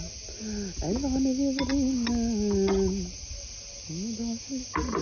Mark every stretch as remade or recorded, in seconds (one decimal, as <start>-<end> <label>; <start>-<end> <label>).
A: 0.0-5.0 recorded